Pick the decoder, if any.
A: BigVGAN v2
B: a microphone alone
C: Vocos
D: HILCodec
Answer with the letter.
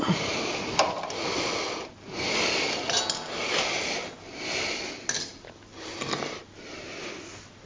B